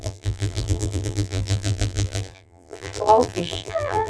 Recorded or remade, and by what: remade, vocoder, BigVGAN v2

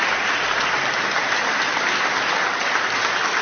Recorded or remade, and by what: recorded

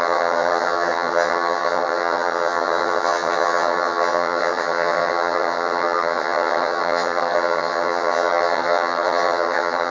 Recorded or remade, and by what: remade, vocoder, HiFi-GAN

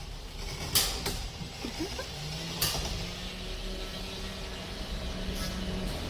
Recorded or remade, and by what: recorded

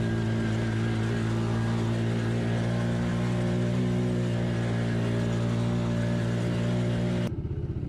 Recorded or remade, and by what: recorded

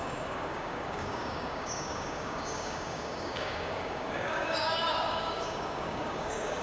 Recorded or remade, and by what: remade, codec, DAC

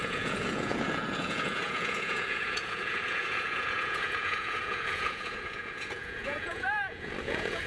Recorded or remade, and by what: remade, vocoder, Vocos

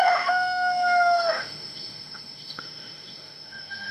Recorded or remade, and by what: remade, autoencoder, DAC-VAE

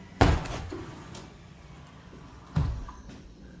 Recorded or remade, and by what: remade, vocoder, Vocos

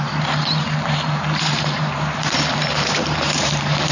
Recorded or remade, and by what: remade, vocoder, BigVGAN v2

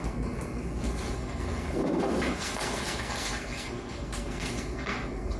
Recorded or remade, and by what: remade, codec, SNAC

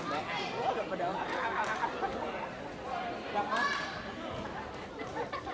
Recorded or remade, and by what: recorded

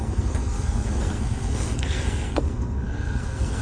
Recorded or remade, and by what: remade, codec, SNAC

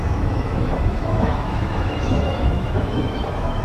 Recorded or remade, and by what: remade, autoencoder, DAC-VAE